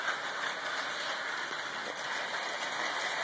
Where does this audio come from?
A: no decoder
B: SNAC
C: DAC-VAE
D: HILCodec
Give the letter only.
A